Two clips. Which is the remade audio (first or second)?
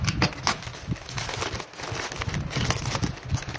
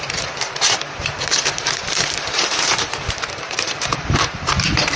second